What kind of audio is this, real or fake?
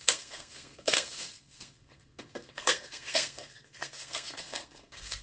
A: fake